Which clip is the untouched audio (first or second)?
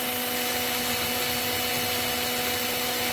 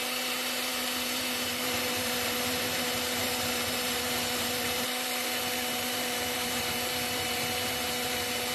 first